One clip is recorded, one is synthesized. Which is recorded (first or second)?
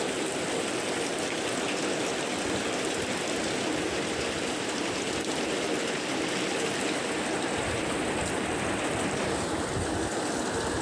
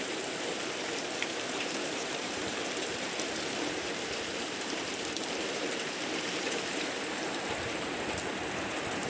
first